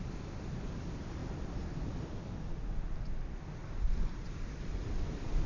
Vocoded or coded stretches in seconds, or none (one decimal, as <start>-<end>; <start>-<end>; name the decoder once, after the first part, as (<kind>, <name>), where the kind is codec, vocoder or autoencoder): none